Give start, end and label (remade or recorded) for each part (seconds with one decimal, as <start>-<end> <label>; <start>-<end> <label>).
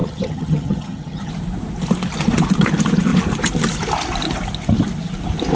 0.0-1.3 remade; 1.3-5.5 recorded